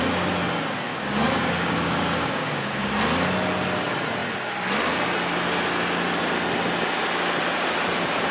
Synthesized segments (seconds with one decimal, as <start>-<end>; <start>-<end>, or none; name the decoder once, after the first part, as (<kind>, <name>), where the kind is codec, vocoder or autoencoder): 0.9-2.9 (codec, DAC)